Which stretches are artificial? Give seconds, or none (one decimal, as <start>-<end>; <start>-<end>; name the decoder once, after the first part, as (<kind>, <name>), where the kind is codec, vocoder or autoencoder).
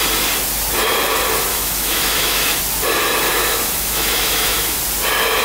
1.5-2.6 (autoencoder, DAC-VAE); 3.3-4.8